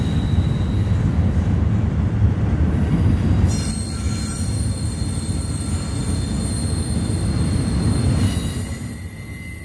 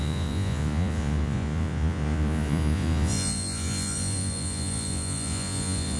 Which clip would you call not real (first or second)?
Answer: second